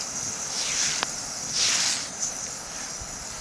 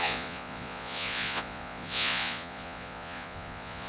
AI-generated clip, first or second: second